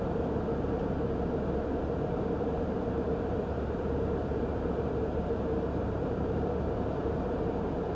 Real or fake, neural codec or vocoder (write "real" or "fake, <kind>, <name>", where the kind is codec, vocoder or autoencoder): fake, vocoder, BigVGAN v2